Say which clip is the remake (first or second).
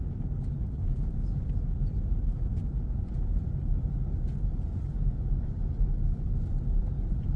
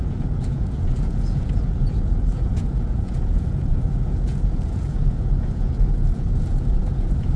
second